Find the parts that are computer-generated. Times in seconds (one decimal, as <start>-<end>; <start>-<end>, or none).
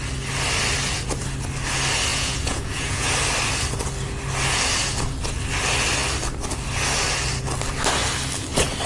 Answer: 2.1-3.1